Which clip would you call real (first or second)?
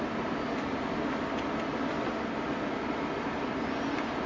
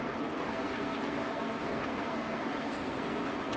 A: first